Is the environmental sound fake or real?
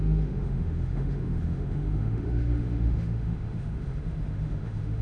fake